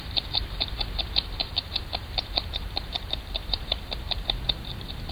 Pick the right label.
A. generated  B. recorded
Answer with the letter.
A